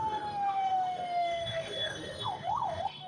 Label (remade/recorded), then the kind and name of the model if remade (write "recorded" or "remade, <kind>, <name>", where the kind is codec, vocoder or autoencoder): remade, autoencoder, DAC-VAE